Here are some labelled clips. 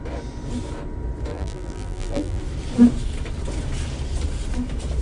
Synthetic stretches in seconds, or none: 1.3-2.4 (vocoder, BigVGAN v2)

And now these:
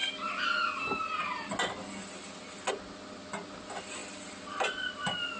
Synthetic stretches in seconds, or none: none

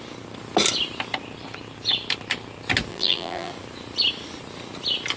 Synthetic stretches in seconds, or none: 2.9-3.5 (vocoder, BigVGAN v2)